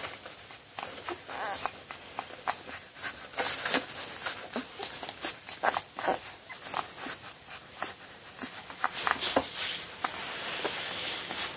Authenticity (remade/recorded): recorded